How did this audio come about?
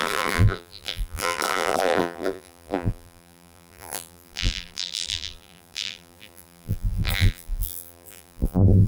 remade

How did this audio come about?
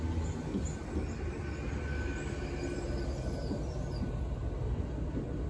recorded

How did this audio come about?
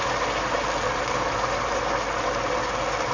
recorded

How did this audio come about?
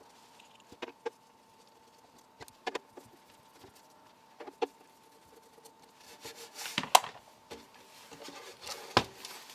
recorded